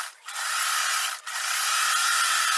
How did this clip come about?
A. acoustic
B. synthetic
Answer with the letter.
A